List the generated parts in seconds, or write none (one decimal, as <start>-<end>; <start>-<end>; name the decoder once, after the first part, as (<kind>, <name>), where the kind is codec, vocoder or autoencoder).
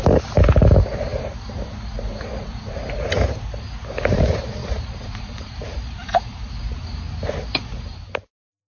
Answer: 4.6-6.5 (vocoder, BigVGAN v2)